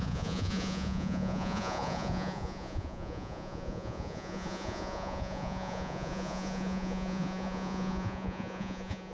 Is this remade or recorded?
remade